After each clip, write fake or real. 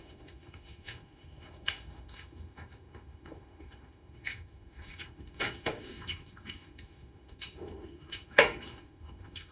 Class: fake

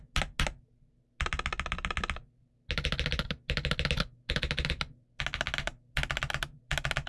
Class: real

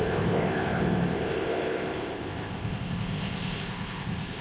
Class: fake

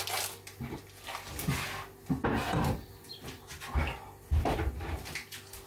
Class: real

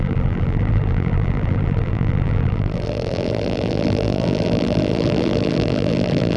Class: fake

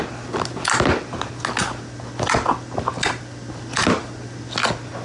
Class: real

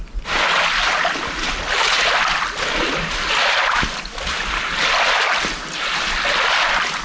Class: real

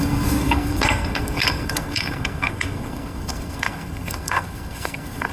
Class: fake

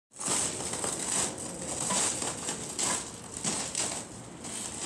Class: real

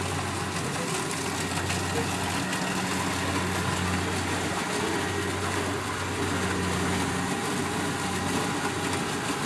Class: real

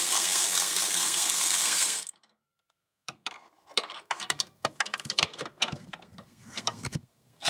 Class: fake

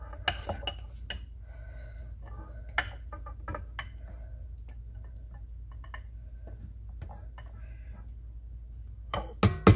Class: real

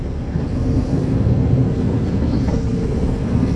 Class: fake